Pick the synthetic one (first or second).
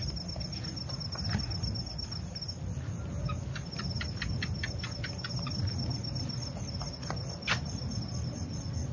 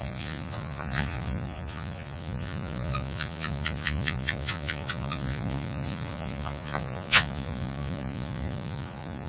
second